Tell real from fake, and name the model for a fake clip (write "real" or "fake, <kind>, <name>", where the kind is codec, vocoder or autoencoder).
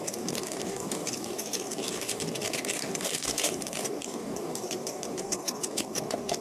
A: fake, codec, DAC